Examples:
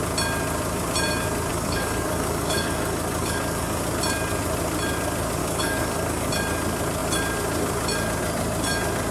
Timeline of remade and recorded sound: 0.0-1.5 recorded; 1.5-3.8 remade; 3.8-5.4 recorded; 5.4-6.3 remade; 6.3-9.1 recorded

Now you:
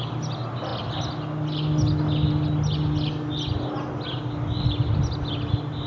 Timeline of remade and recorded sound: 0.0-5.9 recorded

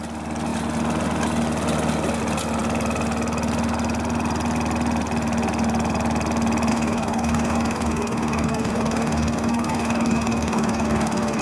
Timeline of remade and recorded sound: 0.0-6.7 recorded; 6.7-11.4 remade